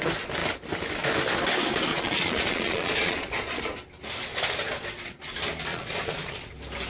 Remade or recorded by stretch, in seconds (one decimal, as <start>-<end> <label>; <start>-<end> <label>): 0.0-1.9 recorded; 1.9-3.6 remade; 3.6-4.3 recorded; 4.3-5.2 remade; 5.2-5.7 recorded; 5.7-6.5 remade; 6.5-6.9 recorded